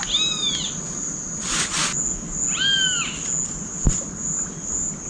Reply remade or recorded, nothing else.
recorded